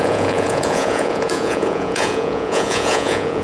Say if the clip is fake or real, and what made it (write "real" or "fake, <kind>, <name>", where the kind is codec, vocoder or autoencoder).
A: fake, vocoder, Vocos